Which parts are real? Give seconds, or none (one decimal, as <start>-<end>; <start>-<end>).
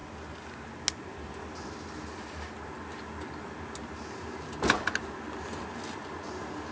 0.0-6.7